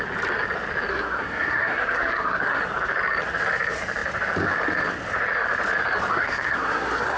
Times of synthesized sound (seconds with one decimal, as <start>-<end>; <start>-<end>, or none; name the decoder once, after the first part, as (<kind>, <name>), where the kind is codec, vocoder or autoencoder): 0.9-2.6 (codec, SNAC); 6.1-7.2